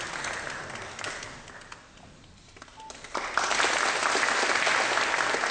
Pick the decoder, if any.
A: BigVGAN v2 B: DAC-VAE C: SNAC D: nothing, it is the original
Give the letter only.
D